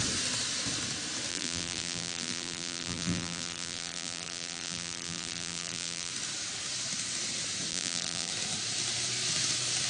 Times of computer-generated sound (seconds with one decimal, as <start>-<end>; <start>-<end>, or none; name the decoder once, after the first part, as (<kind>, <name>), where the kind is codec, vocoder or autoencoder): 1.3-6.1 (vocoder, BigVGAN v2); 7.7-8.3